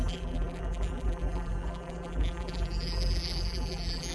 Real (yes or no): no